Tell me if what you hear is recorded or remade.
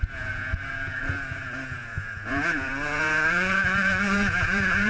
remade